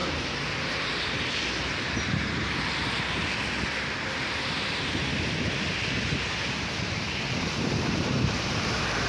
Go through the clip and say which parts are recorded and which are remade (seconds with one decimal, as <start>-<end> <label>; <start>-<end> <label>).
0.0-0.7 recorded; 0.7-3.2 remade; 3.2-4.2 recorded; 4.2-5.1 remade; 5.1-6.4 recorded; 6.4-9.1 remade